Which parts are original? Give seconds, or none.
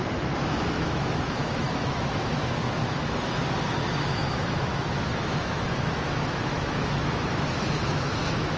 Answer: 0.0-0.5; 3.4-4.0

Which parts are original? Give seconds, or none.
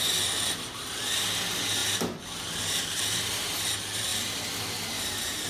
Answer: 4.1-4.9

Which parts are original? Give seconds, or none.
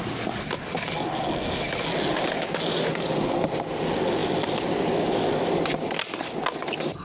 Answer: 0.0-7.0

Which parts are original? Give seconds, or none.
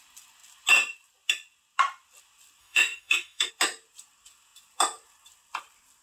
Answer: 0.0-2.6; 3.5-6.0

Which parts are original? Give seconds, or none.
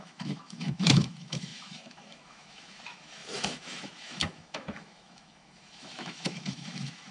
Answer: none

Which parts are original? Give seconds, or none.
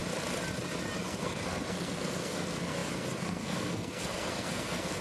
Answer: 0.0-1.0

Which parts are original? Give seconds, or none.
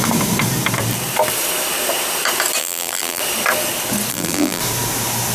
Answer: 0.0-2.6; 3.2-4.1; 4.6-5.3